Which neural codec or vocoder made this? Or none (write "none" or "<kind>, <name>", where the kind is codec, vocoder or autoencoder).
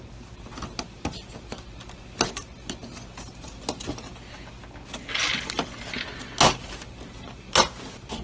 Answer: none